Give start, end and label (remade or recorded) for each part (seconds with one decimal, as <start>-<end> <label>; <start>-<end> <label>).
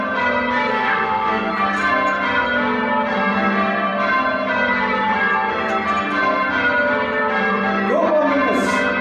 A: 0.0-0.7 recorded; 0.7-1.5 remade; 1.5-9.0 recorded